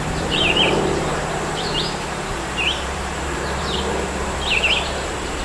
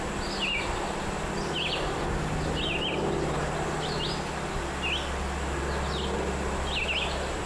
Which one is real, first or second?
second